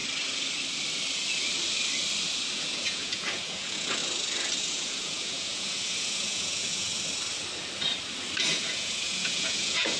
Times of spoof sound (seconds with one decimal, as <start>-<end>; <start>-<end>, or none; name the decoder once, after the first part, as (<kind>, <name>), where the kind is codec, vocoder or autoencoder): 2.5-4.0 (vocoder, Vocos); 4.6-6.9; 8.5-10.0